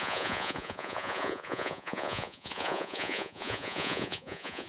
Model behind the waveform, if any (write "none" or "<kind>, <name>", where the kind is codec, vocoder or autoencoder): vocoder, Vocos